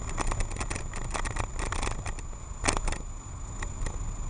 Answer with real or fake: real